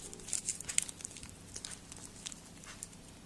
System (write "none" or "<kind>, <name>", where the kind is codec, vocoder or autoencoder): none